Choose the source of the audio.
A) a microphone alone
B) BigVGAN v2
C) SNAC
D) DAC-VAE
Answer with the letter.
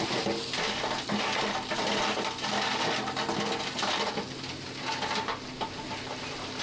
A